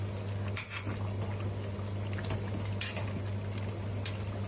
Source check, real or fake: real